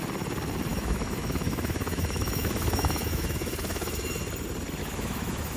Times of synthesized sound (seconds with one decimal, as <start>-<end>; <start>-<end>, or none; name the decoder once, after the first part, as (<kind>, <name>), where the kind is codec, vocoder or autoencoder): 0.7-4.1 (autoencoder, DAC-VAE); 4.8-5.6